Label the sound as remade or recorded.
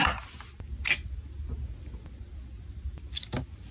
recorded